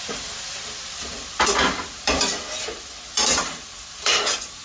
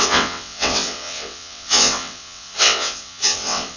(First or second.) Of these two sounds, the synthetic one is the second